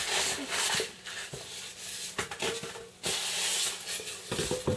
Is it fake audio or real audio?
real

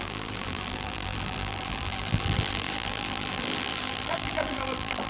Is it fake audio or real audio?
fake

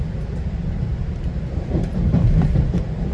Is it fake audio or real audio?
fake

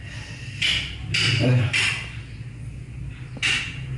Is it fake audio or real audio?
real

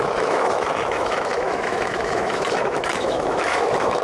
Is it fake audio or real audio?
fake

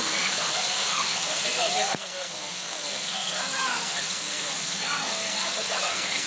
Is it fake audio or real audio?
fake